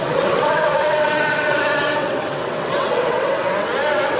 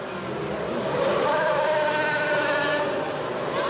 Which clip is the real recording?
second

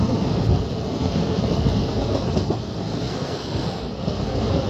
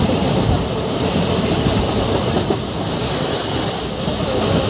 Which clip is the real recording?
second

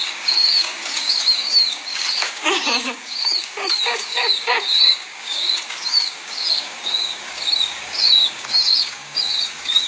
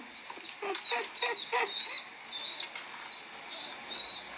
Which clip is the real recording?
second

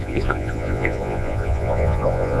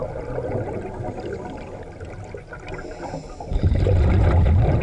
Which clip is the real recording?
second